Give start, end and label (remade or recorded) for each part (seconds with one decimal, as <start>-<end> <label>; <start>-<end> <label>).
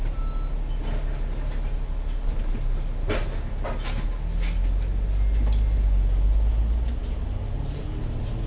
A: 0.0-8.5 recorded